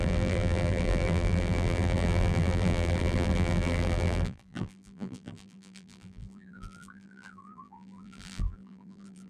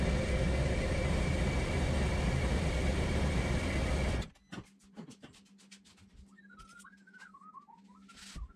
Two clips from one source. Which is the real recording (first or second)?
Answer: second